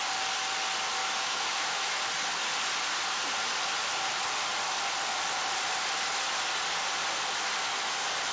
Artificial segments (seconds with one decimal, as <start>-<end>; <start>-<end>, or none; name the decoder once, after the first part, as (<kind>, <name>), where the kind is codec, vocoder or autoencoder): 1.0-2.0 (autoencoder, DAC-VAE)

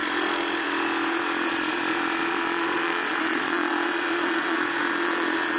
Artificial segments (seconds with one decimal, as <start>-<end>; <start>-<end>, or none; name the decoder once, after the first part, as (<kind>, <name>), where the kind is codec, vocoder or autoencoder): 1.1-5.6 (vocoder, Vocos)

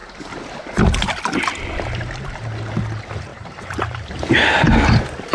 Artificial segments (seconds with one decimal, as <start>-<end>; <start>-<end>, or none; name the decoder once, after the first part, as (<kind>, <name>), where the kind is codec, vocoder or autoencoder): 3.3-4.1 (vocoder, BigVGAN v2)

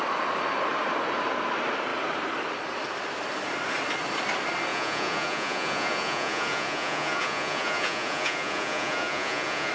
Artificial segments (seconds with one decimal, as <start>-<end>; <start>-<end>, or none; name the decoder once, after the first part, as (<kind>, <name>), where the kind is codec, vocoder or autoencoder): 4.7-9.7 (vocoder, Vocos)

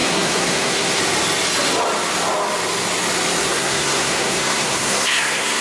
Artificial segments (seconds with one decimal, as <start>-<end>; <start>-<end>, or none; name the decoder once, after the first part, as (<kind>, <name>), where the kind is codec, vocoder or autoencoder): 0.0-1.0 (codec, SNAC); 3.4-5.6

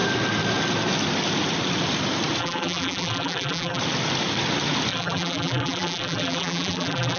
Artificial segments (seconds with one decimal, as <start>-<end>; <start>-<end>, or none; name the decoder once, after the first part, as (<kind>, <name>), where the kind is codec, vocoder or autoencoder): 2.4-3.8 (vocoder, BigVGAN v2); 4.9-7.2

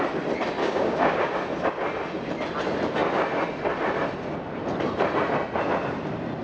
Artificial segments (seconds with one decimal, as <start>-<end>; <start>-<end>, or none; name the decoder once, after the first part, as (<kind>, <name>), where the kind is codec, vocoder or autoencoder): 0.6-1.3 (codec, DAC)

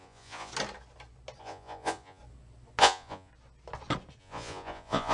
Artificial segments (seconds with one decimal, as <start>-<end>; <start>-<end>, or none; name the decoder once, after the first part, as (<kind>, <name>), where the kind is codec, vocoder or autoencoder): 0.0-0.5 (vocoder, Vocos); 1.4-2.2; 2.8-3.3; 4.2-5.1